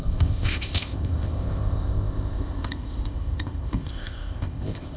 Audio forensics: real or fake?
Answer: fake